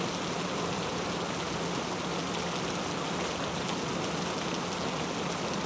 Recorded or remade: recorded